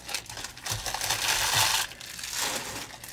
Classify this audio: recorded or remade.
recorded